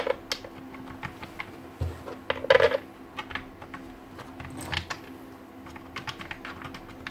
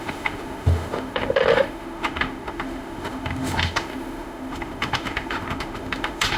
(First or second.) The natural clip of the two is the first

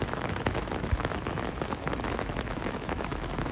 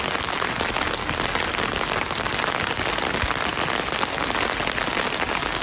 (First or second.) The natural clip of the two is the second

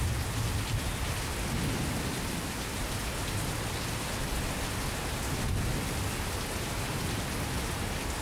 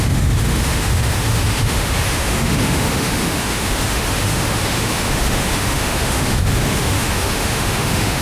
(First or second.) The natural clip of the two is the first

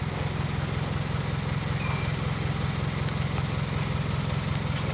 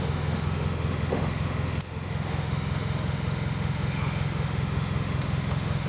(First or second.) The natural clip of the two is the first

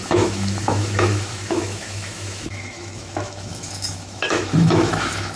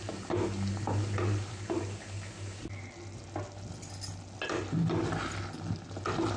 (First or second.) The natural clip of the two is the second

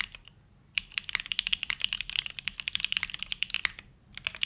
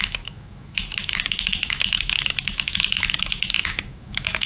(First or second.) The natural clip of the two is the first